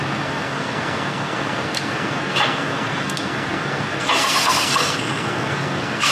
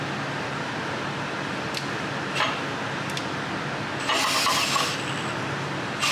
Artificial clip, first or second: first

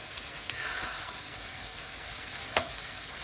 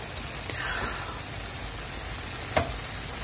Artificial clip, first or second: first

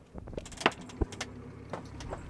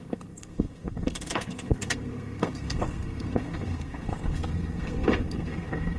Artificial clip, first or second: second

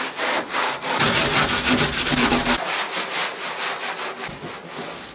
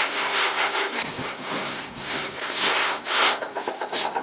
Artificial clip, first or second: second